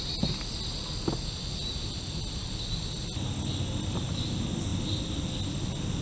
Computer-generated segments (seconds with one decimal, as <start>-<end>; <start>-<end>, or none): none